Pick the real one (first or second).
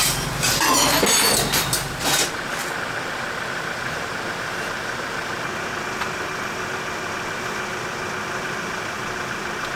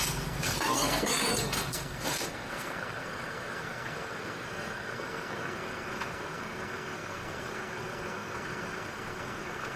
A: first